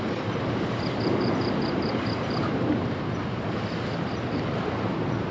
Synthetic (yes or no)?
yes